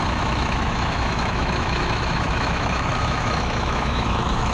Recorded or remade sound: remade